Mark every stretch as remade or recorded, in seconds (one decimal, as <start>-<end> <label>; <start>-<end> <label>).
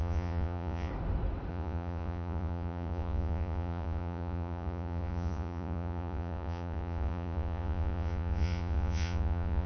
0.0-0.9 remade; 0.9-1.5 recorded; 1.5-9.7 remade